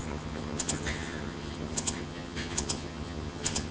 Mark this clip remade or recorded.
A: remade